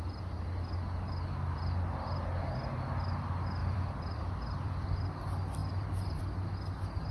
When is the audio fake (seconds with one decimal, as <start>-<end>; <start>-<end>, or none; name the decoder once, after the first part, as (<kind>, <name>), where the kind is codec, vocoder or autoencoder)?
3.6-5.1 (vocoder, BigVGAN v2); 5.6-6.2